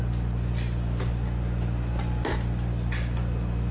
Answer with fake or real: real